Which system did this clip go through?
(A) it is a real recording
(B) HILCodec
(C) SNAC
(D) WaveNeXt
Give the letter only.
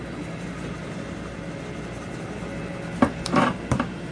A